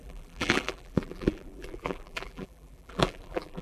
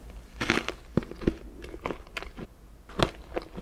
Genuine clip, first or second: second